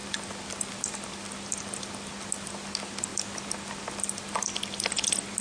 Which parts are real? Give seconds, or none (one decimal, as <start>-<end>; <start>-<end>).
0.0-5.4